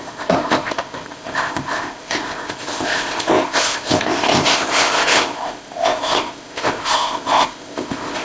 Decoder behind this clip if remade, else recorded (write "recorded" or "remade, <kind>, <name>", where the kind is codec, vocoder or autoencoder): remade, codec, ZipCodec